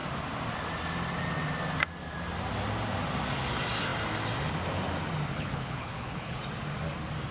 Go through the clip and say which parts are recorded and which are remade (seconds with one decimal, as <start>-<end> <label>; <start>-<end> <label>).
0.0-5.3 recorded; 5.3-6.4 remade; 6.4-7.3 recorded